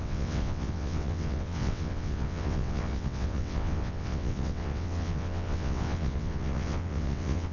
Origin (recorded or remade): remade